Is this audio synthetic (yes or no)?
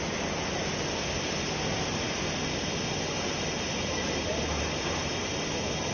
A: no